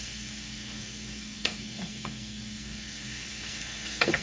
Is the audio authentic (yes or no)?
no